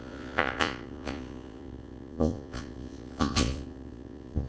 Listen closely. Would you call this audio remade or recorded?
remade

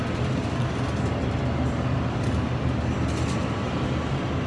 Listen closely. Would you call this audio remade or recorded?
recorded